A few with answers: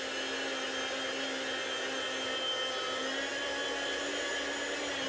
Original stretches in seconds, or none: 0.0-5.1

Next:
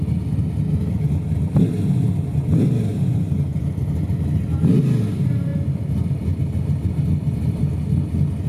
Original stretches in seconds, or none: 0.0-8.5

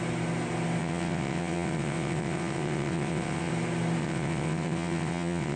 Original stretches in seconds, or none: 0.0-0.8; 3.5-4.0

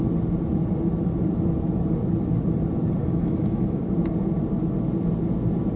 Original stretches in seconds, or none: 0.0-3.0; 3.8-5.8

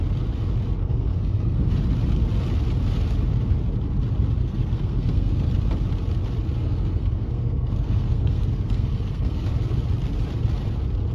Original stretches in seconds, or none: 0.0-0.8; 1.7-4.4; 5.5-6.6; 9.5-11.1